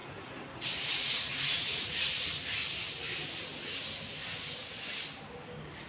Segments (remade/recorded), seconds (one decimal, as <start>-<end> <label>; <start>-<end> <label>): 0.0-0.8 recorded; 0.8-2.3 remade; 2.3-5.9 recorded